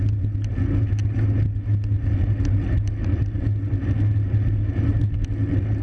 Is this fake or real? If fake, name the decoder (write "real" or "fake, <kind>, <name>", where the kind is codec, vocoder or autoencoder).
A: real